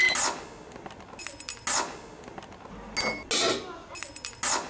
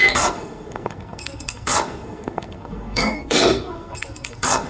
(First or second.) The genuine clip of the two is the first